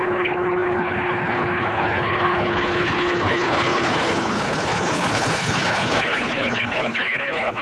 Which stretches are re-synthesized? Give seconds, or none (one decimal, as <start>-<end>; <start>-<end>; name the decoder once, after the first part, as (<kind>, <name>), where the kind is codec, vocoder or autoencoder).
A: 0.0-7.6 (codec, HILCodec)